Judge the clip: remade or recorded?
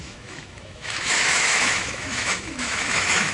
remade